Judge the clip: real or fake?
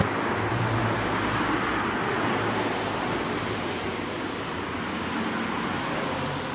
real